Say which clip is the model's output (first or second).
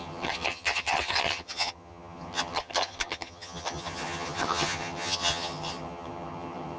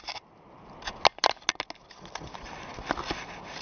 first